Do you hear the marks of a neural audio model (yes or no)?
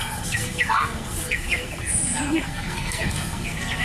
yes